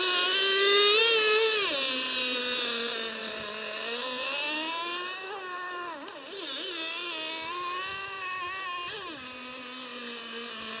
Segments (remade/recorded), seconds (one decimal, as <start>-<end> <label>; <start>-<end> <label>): 0.0-10.8 recorded